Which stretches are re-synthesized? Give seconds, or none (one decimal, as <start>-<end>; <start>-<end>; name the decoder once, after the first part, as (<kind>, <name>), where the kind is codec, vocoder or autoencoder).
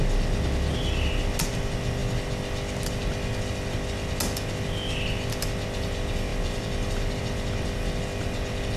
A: none